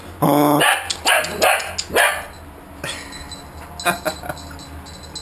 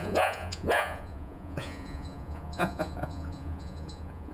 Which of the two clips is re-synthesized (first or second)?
second